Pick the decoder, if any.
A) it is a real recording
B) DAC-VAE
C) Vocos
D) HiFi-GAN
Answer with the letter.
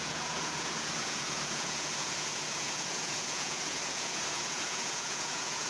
C